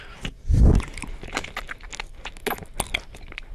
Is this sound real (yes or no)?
yes